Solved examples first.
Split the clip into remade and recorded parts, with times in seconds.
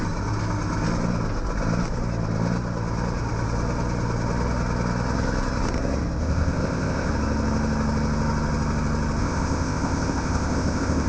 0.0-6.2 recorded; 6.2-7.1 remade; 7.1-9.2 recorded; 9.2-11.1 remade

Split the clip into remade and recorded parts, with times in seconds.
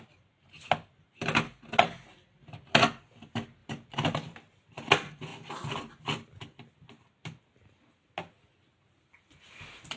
0.0-3.6 recorded; 3.6-4.3 remade; 4.3-10.0 recorded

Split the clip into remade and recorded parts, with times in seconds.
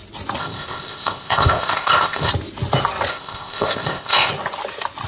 0.0-0.4 recorded; 0.4-2.3 remade; 2.3-3.1 recorded; 3.1-4.3 remade; 4.3-5.1 recorded